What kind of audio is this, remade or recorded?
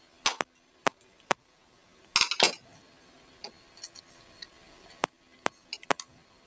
recorded